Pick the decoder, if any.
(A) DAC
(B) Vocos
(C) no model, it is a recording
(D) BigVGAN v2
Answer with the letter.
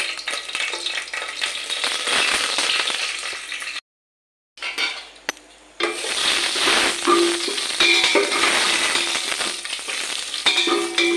C